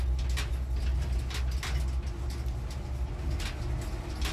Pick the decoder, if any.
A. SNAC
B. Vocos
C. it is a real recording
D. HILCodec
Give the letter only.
C